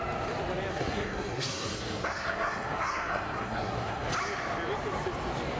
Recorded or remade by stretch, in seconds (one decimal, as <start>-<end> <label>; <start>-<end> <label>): 0.0-0.7 recorded; 0.7-4.1 remade; 4.1-5.6 recorded